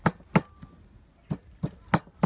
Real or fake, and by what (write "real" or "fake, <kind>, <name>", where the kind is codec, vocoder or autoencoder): real